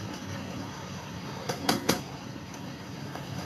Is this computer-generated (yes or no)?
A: yes